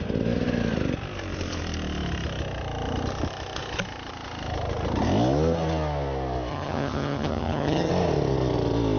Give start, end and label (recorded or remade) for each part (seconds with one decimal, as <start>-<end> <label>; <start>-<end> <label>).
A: 0.0-6.5 recorded; 6.5-7.9 remade; 7.9-9.0 recorded